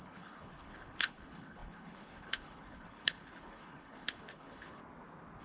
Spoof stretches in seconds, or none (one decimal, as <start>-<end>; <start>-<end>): 0.0-4.8

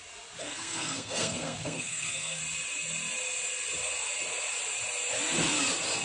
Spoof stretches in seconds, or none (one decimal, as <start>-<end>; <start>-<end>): 0.4-2.4

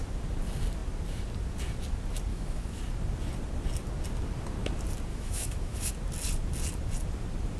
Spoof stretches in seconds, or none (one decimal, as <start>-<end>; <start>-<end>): 2.3-2.8; 5.1-5.9

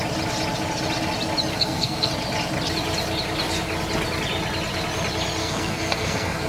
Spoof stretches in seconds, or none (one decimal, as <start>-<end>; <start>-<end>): 1.5-2.1; 5.4-6.5

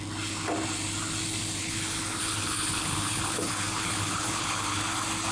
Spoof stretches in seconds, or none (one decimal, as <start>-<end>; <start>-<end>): 1.6-4.8

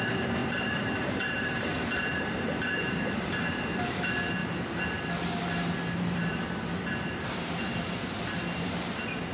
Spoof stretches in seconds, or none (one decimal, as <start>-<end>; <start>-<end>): 0.0-4.4; 6.0-9.3